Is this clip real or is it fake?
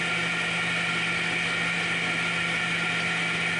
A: real